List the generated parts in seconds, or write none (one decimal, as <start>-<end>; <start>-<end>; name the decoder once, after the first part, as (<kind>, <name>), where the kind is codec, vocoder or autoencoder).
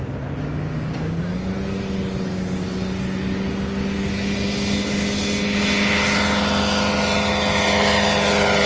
0.7-1.2 (codec, DAC)